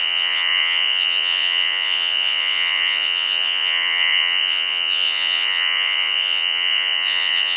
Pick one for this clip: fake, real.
fake